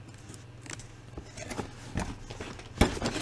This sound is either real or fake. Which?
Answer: real